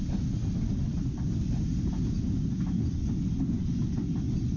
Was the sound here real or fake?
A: real